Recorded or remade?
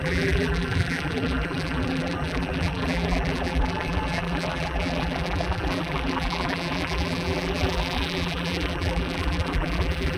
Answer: remade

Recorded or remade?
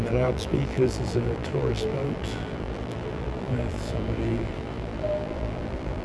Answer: remade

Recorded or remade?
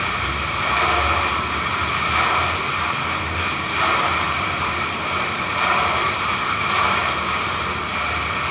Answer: remade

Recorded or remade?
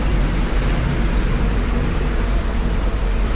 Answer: remade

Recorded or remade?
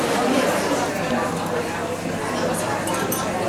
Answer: recorded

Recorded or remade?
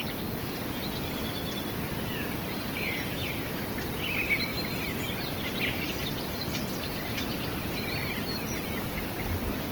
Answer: remade